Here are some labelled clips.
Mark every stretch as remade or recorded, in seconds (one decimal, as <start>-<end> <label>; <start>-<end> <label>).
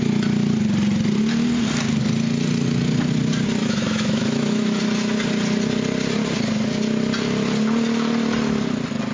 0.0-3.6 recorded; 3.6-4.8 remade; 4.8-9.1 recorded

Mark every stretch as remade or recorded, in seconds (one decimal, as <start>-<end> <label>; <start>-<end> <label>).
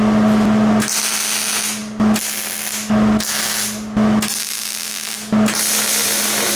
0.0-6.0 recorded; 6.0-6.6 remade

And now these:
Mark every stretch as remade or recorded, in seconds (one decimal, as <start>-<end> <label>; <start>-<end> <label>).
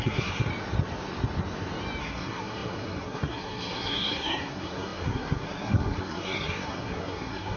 0.0-0.5 remade; 0.5-2.0 recorded; 2.0-7.6 remade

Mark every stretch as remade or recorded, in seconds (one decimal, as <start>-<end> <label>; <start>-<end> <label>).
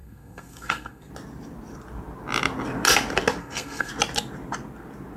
0.0-1.1 remade; 1.1-3.4 recorded; 3.4-3.9 remade; 3.9-5.2 recorded